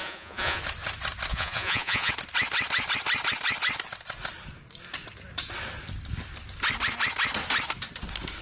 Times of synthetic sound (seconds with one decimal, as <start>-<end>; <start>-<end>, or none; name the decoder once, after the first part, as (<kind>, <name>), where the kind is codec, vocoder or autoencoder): 0.0-0.6 (vocoder, Vocos); 1.3-2.1